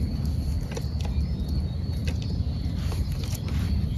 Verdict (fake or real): real